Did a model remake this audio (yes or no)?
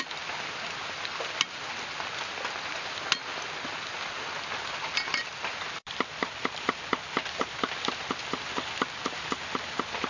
no